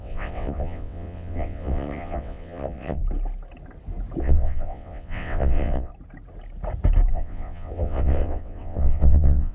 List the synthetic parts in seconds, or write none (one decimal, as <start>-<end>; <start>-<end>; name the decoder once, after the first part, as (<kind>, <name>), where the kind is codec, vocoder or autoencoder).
0.0-3.0 (vocoder, WaveNeXt); 4.2-5.9; 7.1-9.5